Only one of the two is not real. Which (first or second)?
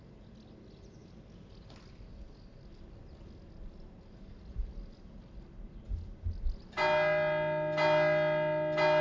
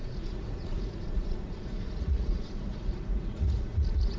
second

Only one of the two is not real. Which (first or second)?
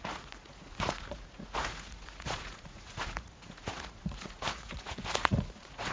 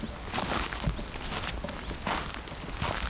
first